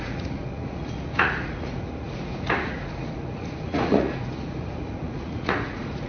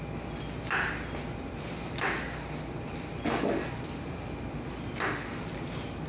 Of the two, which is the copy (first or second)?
first